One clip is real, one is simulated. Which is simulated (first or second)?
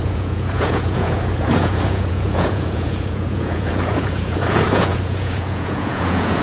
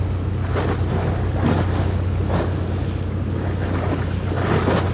first